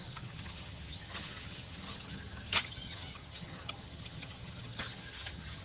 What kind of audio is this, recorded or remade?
remade